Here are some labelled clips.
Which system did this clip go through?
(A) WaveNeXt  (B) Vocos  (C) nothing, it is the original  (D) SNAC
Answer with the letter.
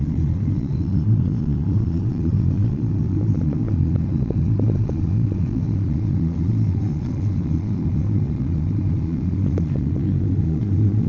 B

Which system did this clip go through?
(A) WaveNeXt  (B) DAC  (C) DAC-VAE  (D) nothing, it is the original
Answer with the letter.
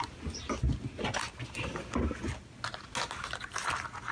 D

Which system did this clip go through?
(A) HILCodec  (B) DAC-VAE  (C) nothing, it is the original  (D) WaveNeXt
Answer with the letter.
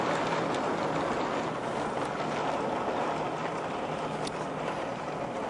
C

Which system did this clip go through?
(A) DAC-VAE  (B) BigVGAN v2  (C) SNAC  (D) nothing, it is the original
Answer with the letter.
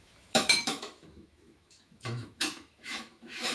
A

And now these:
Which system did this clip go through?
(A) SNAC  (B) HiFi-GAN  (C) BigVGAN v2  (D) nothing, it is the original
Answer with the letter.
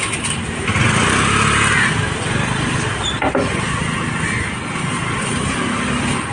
D